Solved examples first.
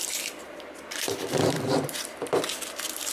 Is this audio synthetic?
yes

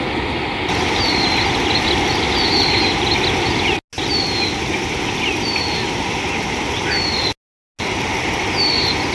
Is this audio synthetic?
no